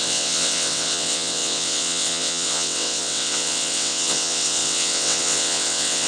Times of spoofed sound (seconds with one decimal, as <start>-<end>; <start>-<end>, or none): 0.0-6.1